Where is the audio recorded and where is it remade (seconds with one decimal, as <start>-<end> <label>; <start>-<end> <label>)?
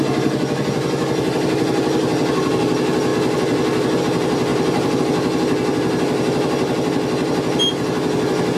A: 0.0-4.5 recorded; 4.5-5.0 remade; 5.0-8.6 recorded